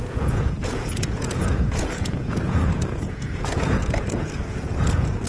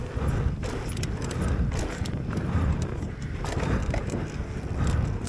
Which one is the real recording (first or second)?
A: second